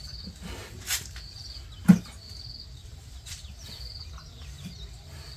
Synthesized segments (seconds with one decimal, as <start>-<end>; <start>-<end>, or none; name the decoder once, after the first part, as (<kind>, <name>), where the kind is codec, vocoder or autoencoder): 2.8-3.7 (vocoder, BigVGAN v2)